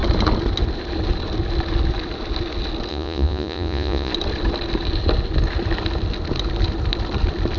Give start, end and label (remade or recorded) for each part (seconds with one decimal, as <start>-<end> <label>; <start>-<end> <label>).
0.0-2.9 recorded; 2.9-4.1 remade; 4.1-7.6 recorded

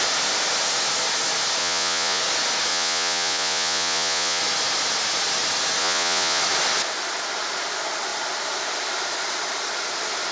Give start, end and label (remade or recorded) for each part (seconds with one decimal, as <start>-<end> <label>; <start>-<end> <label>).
0.0-1.6 recorded; 1.6-2.2 remade; 2.2-2.7 recorded; 2.7-4.4 remade; 4.4-5.8 recorded; 5.8-6.4 remade; 6.4-10.3 recorded

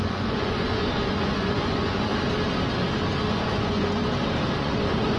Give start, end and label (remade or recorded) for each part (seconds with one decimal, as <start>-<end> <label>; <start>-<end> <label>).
0.0-2.1 remade; 2.1-3.3 recorded; 3.3-4.0 remade; 4.0-4.6 recorded; 4.6-5.2 remade